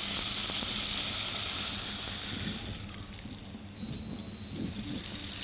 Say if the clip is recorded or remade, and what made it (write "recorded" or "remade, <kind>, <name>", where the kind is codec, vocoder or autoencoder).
recorded